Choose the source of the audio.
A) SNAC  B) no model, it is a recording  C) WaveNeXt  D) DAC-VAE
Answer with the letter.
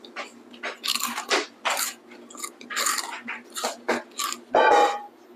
B